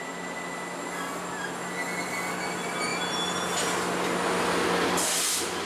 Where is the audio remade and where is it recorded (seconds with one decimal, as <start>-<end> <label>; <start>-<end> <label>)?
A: 0.0-5.7 recorded